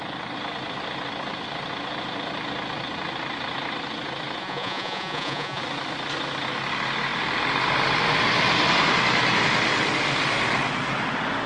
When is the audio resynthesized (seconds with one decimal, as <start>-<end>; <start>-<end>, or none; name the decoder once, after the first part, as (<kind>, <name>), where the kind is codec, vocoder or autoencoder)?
4.4-5.6 (vocoder, Vocos)

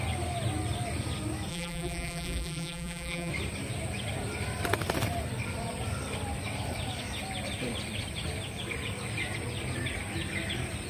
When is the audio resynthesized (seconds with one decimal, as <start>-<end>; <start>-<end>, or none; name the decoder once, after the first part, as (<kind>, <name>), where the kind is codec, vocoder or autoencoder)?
1.5-3.3 (vocoder, BigVGAN v2)

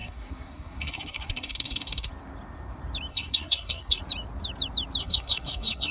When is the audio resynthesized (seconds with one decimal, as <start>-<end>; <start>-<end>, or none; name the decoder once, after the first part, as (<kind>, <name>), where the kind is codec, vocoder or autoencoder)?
0.0-2.1 (codec, SNAC); 3.1-4.0; 5.0-5.9

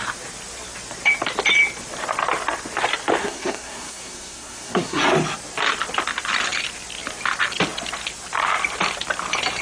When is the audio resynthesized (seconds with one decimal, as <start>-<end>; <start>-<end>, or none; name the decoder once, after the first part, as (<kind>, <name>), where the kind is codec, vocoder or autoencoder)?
3.2-5.0 (codec, SNAC)

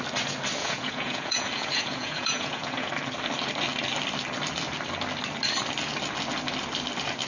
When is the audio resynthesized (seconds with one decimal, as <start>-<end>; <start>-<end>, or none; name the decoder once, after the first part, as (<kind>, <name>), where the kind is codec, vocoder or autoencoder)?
0.6-2.9 (vocoder, Vocos)

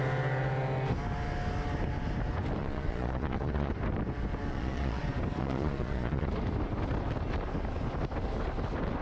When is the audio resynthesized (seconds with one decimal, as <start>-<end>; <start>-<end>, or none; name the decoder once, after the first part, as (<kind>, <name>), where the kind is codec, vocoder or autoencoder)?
2.6-3.7 (vocoder, Vocos); 4.5-5.0; 5.4-6.3